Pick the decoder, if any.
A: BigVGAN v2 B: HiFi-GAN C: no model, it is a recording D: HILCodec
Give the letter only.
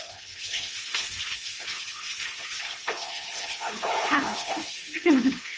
D